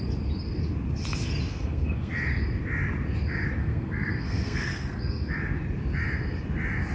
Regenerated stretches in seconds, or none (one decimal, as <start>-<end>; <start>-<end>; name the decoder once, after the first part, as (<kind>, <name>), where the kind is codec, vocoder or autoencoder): 1.5-2.1 (codec, SNAC); 3.6-5.3